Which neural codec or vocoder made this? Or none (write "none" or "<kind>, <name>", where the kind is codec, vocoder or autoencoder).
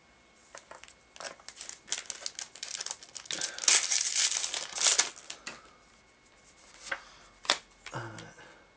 none